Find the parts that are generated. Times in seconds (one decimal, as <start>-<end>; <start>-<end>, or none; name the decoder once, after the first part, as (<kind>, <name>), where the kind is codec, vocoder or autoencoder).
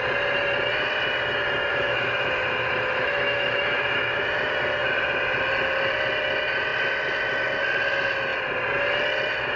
1.7-4.5 (autoencoder, DAC-VAE)